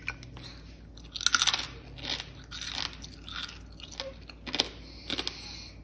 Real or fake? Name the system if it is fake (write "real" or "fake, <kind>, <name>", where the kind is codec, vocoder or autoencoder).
real